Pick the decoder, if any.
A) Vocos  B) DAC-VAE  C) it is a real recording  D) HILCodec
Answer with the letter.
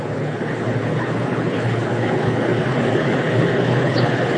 D